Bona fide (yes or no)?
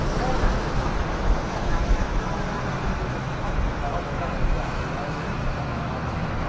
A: no